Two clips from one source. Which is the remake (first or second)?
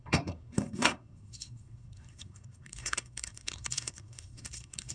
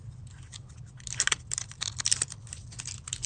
first